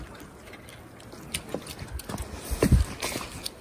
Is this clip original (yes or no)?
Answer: yes